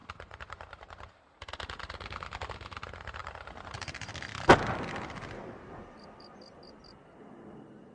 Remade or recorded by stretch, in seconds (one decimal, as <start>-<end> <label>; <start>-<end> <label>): 0.0-1.2 remade; 1.2-3.2 recorded; 3.2-4.1 remade; 4.1-7.9 recorded